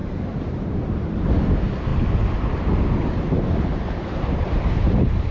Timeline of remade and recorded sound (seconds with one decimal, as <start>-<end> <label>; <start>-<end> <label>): 0.0-1.3 remade; 1.3-3.7 recorded; 3.7-5.3 remade